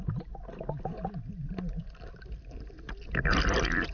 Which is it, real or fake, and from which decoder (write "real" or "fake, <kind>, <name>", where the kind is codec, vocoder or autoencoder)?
real